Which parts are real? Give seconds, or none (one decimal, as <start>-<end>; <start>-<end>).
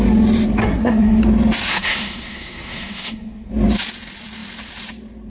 0.0-0.6; 1.2-1.7; 3.5-5.3